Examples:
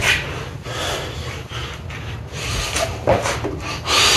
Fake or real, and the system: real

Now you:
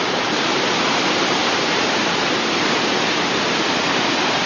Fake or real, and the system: fake, vocoder, BigVGAN v2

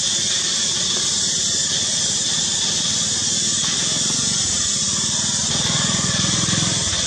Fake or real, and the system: real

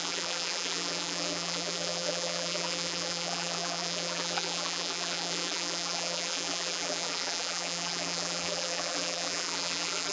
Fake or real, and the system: fake, vocoder, BigVGAN v2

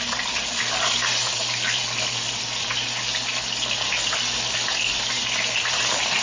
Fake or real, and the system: real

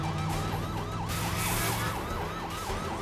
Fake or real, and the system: real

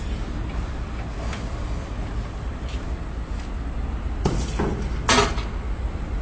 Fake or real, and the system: real